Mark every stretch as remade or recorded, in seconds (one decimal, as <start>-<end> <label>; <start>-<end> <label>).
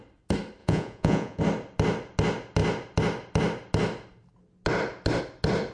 0.0-0.6 recorded; 0.6-1.4 remade; 1.4-5.7 recorded